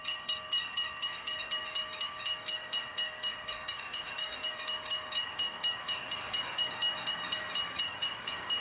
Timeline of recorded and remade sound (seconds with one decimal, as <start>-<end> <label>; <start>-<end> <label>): 0.0-8.6 remade

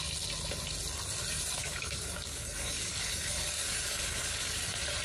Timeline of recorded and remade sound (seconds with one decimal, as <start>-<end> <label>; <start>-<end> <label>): 0.0-1.6 recorded; 1.6-4.6 remade; 4.6-5.0 recorded

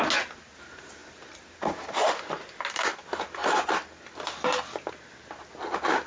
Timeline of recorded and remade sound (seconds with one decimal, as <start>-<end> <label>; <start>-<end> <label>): 0.0-6.1 recorded

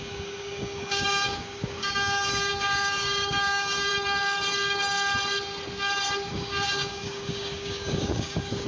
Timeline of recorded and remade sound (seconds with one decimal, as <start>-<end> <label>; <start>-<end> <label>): 0.0-3.9 remade; 3.9-6.3 recorded; 6.3-8.7 remade

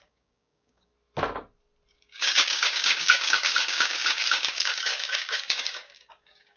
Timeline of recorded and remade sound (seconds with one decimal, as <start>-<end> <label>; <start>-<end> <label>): 0.0-0.9 remade; 0.9-1.9 recorded; 1.9-6.6 remade

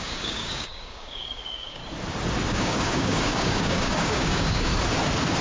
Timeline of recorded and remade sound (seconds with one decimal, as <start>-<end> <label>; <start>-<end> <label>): 0.0-1.8 remade; 1.8-2.5 recorded; 2.5-4.7 remade; 4.7-5.4 recorded